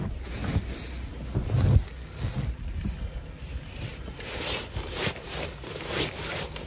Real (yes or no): yes